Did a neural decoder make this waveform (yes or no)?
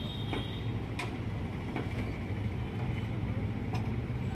no